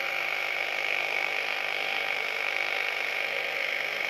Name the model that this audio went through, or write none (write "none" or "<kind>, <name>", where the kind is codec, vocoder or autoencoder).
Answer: codec, SNAC